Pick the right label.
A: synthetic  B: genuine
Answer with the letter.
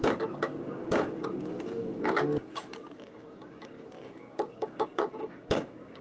A